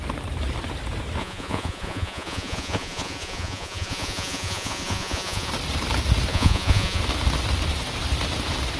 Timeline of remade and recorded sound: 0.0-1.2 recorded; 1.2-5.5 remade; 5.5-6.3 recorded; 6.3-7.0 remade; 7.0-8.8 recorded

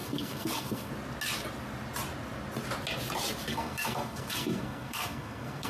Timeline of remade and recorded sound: 0.0-0.9 remade; 0.9-3.5 recorded; 3.5-5.7 remade

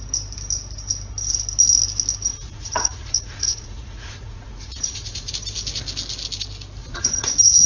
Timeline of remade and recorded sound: 0.0-2.3 recorded; 2.3-5.3 remade; 5.3-6.8 recorded; 6.8-7.3 remade; 7.3-7.7 recorded

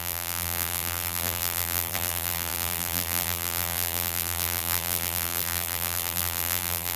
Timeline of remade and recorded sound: 0.0-7.0 remade